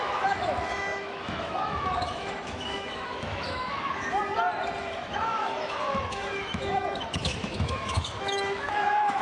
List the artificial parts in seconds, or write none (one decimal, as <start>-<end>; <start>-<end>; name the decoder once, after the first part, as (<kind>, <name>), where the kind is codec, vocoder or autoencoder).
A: 0.0-4.2 (autoencoder, DAC-VAE); 4.8-9.2